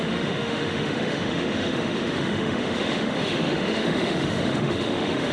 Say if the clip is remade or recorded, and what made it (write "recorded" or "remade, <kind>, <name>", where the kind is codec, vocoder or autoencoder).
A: remade, autoencoder, DAC-VAE